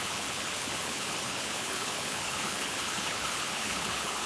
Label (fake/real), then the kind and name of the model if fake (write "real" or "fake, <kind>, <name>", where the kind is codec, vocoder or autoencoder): fake, codec, HILCodec